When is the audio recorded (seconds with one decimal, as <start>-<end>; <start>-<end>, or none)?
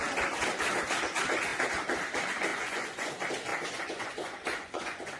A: 0.0-2.5; 3.1-3.5